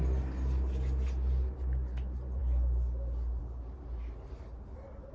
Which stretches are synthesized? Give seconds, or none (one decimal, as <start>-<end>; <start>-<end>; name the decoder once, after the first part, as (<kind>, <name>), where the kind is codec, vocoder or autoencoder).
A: none